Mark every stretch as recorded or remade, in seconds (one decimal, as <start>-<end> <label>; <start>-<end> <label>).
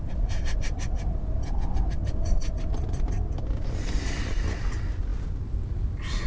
0.0-6.3 recorded